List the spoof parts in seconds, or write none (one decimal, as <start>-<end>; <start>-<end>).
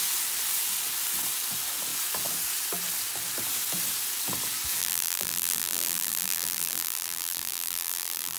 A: 4.8-8.4